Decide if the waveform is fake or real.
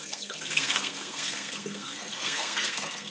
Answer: fake